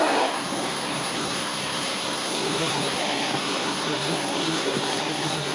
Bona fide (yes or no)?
no